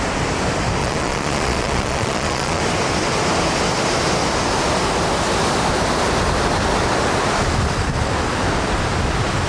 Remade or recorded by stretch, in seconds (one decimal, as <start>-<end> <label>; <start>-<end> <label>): 0.0-0.8 recorded; 0.8-2.6 remade; 2.6-9.5 recorded